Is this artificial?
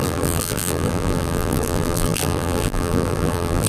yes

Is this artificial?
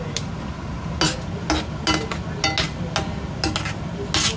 no